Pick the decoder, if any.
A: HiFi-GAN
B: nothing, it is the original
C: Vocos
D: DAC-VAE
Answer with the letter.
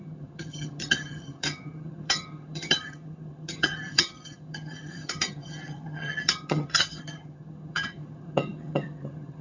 A